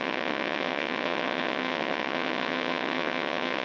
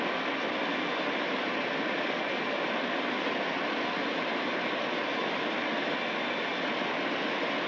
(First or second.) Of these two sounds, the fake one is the first